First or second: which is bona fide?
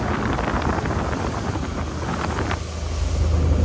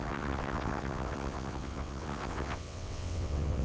first